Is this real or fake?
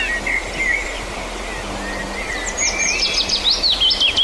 real